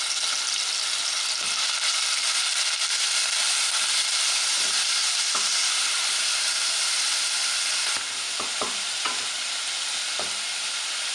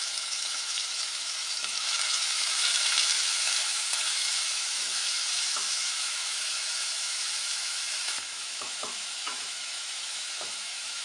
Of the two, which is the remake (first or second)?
second